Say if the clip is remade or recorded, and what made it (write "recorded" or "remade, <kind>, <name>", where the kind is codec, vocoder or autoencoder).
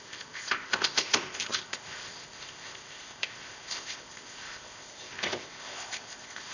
remade, codec, ZipCodec